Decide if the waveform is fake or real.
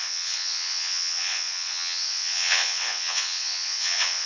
fake